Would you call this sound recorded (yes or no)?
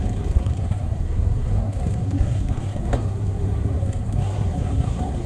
no